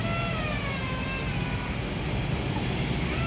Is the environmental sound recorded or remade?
recorded